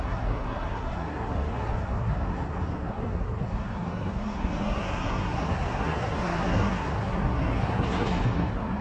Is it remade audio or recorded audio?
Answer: remade